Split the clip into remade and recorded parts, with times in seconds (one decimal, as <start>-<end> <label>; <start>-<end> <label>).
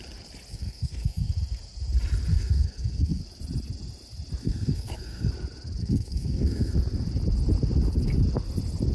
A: 0.0-0.5 recorded; 0.5-1.3 remade; 1.3-2.3 recorded; 2.3-3.2 remade; 3.2-4.4 recorded; 4.4-5.3 remade; 5.3-5.8 recorded; 5.8-6.7 remade; 6.7-8.9 recorded